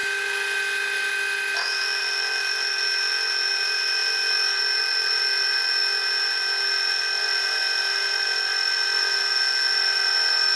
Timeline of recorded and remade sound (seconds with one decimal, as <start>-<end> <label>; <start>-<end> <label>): 0.0-10.6 recorded